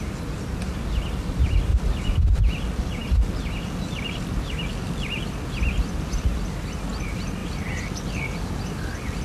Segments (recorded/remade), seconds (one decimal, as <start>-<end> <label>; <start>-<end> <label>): 0.0-9.2 recorded